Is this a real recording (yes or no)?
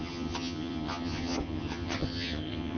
no